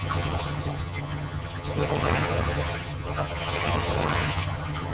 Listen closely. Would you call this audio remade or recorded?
remade